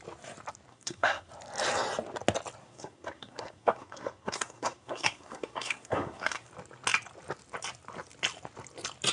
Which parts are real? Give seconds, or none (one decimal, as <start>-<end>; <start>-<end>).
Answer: 0.0-0.7; 1.3-2.6; 6.5-9.1